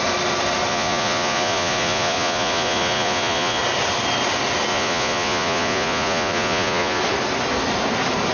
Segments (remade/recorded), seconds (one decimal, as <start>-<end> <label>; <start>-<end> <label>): 0.0-0.7 recorded; 0.7-3.6 remade; 3.6-4.7 recorded; 4.7-7.0 remade; 7.0-8.3 recorded

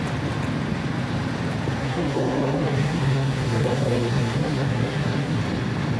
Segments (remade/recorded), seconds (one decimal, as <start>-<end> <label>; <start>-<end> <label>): 0.0-1.8 recorded; 1.8-5.4 remade; 5.4-6.0 recorded

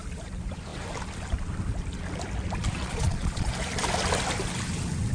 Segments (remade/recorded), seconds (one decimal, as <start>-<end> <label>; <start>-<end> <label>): 0.0-2.8 recorded; 2.8-3.5 remade; 3.5-5.1 recorded

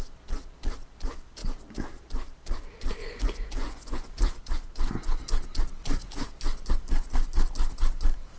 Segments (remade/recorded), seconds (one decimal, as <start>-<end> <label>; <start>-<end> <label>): 0.0-3.0 recorded; 3.0-4.4 remade; 4.4-5.8 recorded; 5.8-6.3 remade; 6.3-8.4 recorded

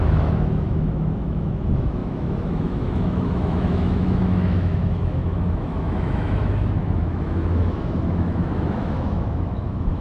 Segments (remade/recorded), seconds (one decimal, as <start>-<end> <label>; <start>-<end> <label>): 0.0-10.0 remade